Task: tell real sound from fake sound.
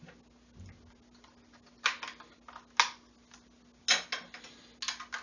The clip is real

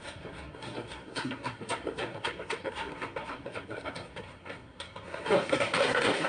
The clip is fake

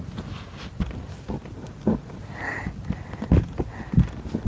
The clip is real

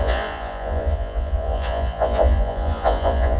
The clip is fake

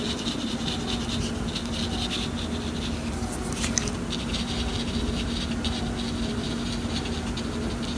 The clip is real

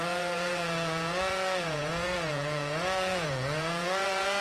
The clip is fake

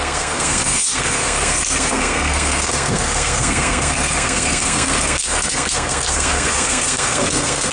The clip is fake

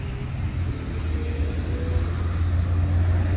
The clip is real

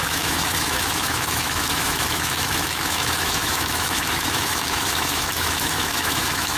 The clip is fake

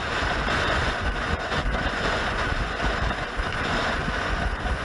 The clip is fake